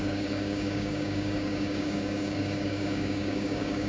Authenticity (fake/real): fake